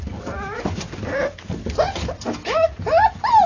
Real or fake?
fake